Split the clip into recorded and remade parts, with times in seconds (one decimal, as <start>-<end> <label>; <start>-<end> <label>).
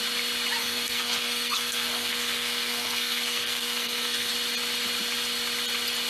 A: 0.0-0.6 recorded; 0.6-4.3 remade; 4.3-6.1 recorded